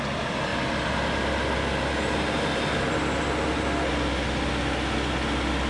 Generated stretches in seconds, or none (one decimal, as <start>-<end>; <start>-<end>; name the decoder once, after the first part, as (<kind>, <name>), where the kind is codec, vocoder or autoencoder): none